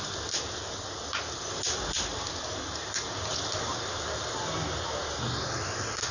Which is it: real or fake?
real